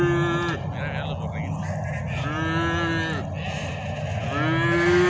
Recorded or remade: recorded